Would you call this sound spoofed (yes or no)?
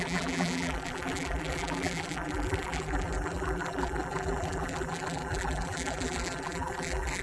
yes